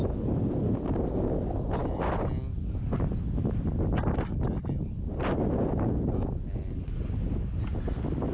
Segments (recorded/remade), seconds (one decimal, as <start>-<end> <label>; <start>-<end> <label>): 0.0-8.3 recorded